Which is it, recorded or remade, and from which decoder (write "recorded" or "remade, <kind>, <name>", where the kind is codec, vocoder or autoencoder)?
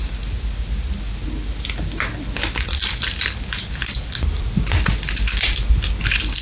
recorded